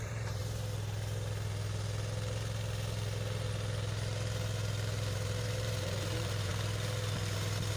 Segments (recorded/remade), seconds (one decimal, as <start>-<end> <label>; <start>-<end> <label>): 0.0-0.4 remade; 0.4-5.1 recorded; 5.1-6.5 remade; 6.5-7.8 recorded